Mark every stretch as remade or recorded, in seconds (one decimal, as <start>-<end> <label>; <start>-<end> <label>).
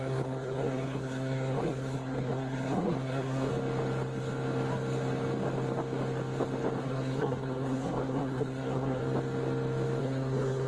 0.0-3.5 remade; 3.5-6.8 recorded; 6.8-9.0 remade; 9.0-10.0 recorded; 10.0-10.7 remade